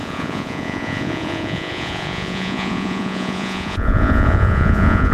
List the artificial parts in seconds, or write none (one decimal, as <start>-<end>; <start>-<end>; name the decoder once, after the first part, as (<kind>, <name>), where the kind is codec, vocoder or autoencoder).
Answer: 0.0-5.1 (vocoder, Vocos)